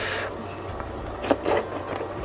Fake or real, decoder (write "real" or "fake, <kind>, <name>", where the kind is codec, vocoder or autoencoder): real